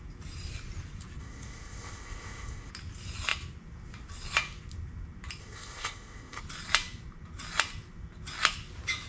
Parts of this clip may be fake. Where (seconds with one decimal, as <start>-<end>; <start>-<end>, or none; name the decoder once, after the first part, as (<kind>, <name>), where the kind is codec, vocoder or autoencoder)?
1.2-2.7 (codec, ZipCodec); 5.4-6.4